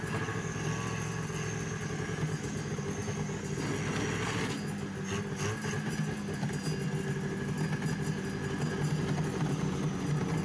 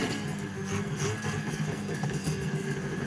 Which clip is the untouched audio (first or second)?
first